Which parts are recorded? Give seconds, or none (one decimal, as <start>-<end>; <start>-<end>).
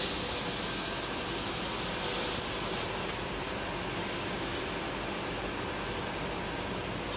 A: 0.0-4.1; 4.6-7.2